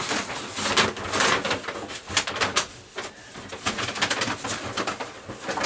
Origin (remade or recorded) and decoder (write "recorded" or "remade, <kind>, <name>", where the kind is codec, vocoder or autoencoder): recorded